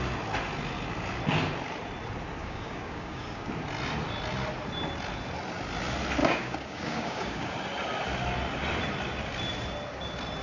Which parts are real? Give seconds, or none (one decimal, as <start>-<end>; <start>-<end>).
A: 0.0-2.4; 3.5-6.2; 7.5-10.4